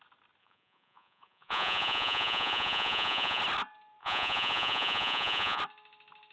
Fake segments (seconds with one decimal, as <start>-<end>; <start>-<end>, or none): 0.4-3.4; 4.0-5.6